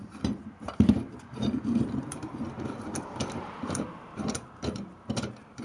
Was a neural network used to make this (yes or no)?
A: yes